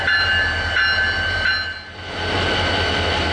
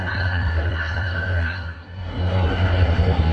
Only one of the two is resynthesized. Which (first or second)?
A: second